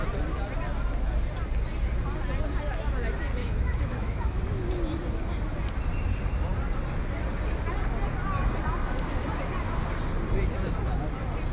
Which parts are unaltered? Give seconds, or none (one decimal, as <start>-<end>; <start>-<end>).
0.0-3.4; 4.4-11.5